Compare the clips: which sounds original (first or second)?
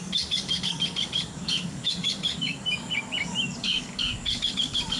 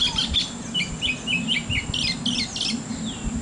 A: second